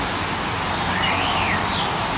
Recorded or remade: recorded